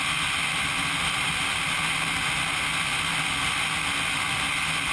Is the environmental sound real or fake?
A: real